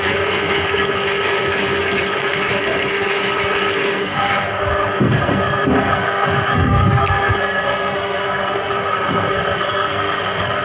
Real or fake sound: fake